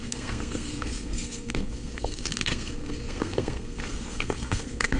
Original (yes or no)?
no